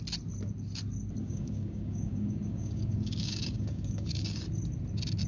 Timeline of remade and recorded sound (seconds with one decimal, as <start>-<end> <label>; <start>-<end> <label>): 0.0-1.2 recorded; 1.2-4.4 remade; 4.4-5.3 recorded